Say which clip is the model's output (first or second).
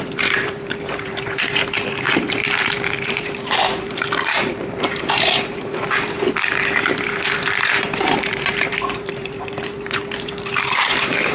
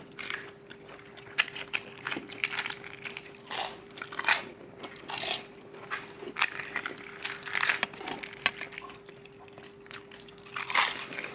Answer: first